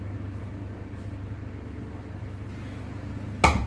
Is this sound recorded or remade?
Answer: recorded